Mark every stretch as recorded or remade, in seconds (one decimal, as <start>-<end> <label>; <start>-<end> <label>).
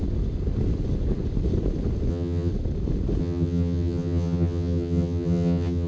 0.0-2.1 recorded; 2.1-2.5 remade; 2.5-3.2 recorded; 3.2-5.9 remade